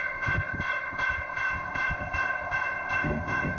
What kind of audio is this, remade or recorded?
remade